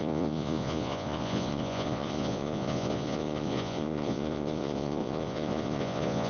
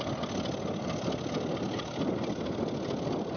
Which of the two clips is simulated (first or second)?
first